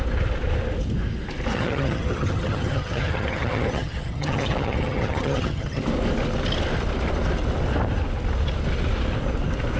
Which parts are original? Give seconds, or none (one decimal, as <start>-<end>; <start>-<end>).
0.0-1.5; 5.8-9.8